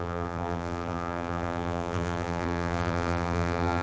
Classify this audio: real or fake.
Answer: fake